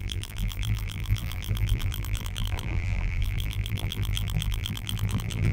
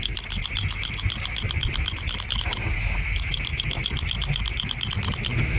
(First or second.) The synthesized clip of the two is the first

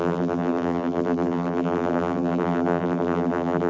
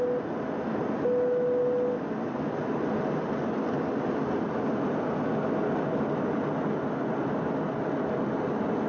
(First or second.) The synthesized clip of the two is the first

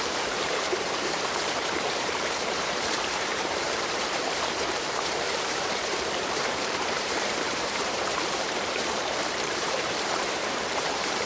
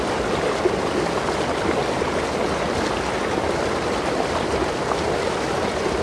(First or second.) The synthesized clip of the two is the first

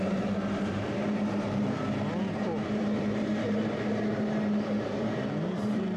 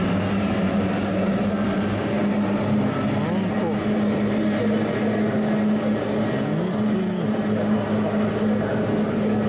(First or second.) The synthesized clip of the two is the first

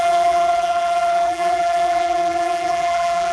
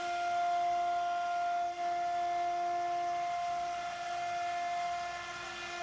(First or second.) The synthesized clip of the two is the first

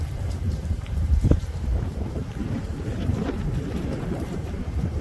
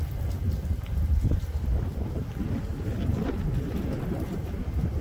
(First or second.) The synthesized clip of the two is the first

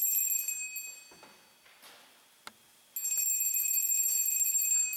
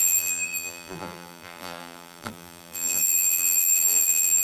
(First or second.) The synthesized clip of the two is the second